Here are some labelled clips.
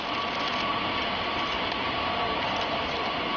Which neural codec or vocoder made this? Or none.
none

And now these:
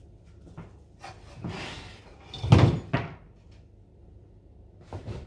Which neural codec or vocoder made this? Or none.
none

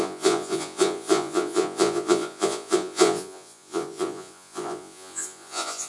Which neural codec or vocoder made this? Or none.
vocoder, Vocos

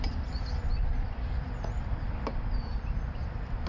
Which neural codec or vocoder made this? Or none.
vocoder, BigVGAN v2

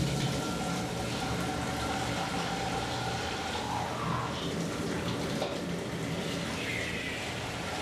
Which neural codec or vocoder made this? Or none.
none